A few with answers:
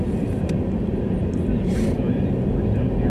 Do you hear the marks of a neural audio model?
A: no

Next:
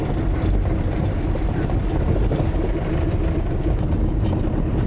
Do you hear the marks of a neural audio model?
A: no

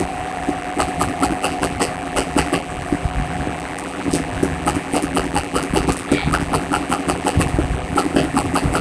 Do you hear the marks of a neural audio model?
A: yes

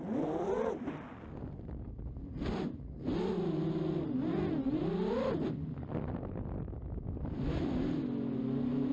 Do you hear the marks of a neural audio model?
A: no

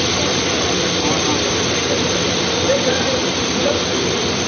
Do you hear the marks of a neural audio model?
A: yes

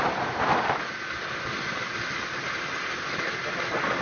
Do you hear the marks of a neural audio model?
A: no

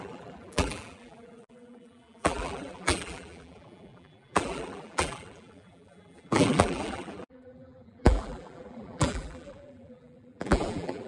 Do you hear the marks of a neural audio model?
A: yes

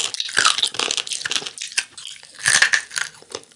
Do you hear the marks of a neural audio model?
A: no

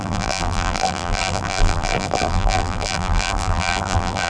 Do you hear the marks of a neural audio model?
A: yes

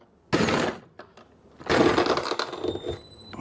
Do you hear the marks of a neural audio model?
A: no